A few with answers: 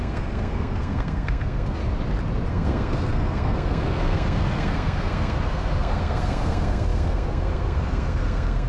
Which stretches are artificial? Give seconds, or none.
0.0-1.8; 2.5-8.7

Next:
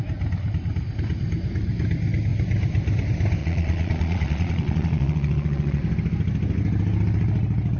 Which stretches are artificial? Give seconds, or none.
3.4-5.8

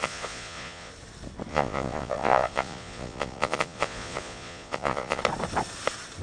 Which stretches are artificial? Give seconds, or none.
0.0-0.9; 1.5-5.2

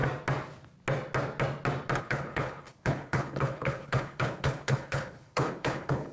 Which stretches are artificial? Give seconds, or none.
2.0-6.1